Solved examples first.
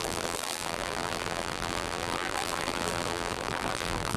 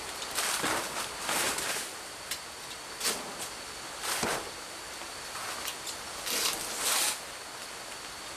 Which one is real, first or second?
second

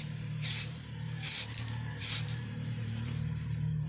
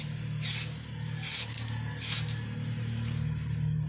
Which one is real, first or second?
second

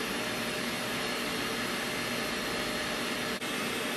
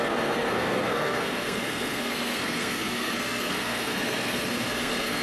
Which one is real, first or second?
first